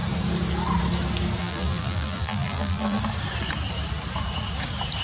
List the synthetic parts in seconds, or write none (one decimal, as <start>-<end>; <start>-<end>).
1.4-3.0